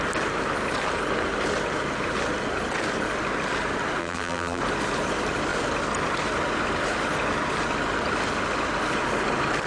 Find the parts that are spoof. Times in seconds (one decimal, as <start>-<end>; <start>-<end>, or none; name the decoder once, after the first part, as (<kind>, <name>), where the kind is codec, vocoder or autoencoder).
4.0-4.6 (vocoder, BigVGAN v2)

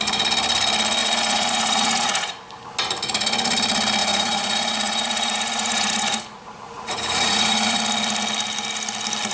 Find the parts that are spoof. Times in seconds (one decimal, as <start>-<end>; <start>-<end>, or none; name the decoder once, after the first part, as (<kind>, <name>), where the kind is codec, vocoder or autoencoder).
1.0-2.4 (vocoder, Vocos); 4.0-7.8